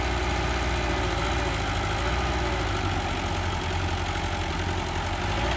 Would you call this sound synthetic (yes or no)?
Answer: no